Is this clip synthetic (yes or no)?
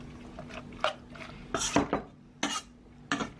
no